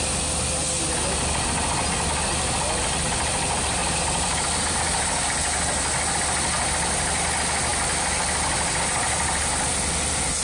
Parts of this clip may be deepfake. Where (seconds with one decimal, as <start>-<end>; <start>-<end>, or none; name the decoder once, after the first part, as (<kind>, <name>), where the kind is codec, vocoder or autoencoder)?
3.8-5.1 (vocoder, BigVGAN v2)